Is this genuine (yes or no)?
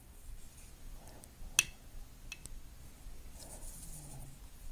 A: yes